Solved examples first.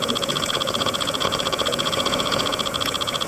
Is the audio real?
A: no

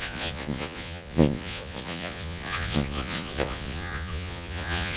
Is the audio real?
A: no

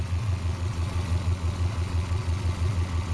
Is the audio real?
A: no